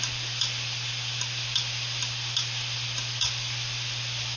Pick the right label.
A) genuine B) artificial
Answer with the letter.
A